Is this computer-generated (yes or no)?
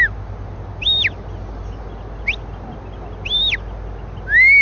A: no